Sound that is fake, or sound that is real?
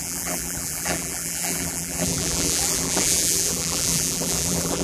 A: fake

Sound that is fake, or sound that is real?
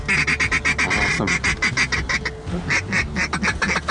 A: real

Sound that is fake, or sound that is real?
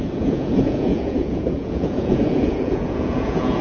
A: fake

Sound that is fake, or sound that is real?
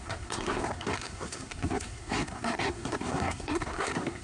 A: fake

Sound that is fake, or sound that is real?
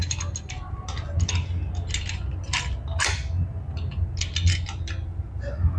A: real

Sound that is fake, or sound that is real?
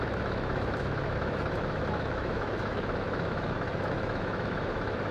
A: fake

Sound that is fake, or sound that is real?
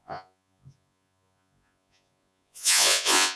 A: fake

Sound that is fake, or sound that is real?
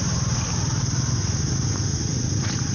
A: real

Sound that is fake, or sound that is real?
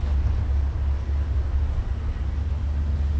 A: real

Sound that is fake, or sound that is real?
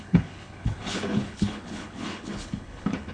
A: fake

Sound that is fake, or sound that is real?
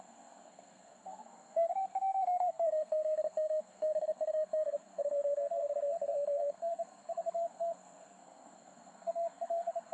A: fake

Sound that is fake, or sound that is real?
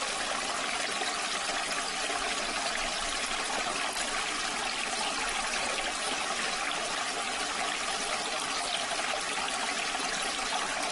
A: real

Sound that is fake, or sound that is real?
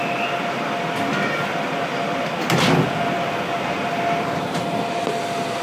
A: real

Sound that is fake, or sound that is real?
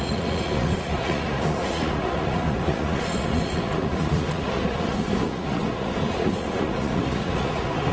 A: fake